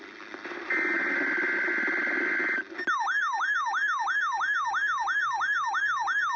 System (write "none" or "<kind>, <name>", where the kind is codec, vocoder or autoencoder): none